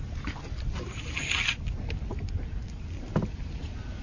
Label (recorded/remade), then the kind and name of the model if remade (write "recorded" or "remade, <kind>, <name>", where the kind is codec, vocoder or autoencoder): recorded